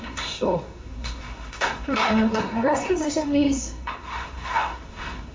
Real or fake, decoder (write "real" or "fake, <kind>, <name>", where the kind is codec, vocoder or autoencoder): fake, codec, SNAC